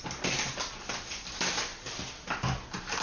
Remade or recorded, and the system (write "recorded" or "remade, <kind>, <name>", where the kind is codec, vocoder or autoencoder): recorded